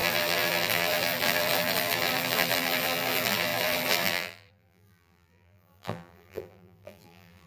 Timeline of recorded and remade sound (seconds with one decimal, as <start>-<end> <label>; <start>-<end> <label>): 0.0-7.5 remade